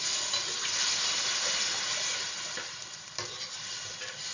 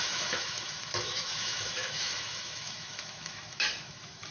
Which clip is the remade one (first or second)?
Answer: second